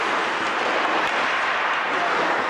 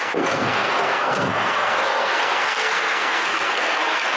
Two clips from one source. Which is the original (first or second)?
first